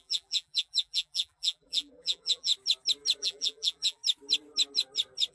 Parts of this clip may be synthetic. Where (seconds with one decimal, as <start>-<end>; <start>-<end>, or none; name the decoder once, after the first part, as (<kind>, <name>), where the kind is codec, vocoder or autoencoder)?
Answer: 0.0-2.5 (vocoder, BigVGAN v2); 3.2-4.0